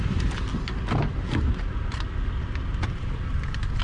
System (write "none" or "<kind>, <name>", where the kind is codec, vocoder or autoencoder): none